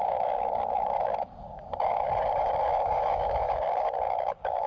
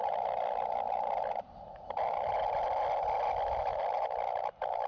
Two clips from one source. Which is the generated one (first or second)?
first